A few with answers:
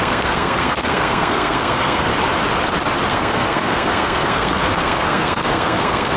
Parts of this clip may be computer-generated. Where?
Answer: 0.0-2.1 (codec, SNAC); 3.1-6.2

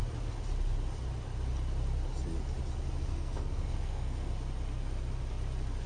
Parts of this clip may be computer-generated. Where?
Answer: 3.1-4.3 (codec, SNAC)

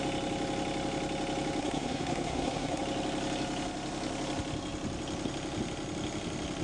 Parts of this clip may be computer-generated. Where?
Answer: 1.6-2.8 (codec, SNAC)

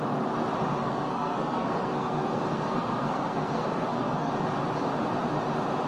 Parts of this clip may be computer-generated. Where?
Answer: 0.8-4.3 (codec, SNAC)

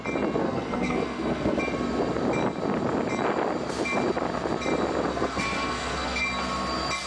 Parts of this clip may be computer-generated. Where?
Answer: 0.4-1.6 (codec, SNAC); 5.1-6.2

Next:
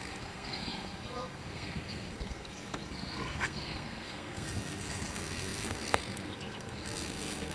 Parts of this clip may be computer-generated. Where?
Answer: 0.0-7.5 (codec, SNAC)